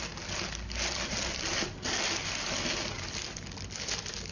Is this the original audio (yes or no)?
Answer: yes